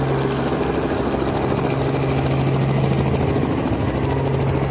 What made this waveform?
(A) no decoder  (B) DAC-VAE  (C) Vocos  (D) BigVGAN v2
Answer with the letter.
A